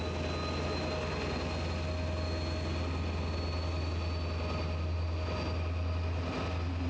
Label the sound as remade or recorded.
recorded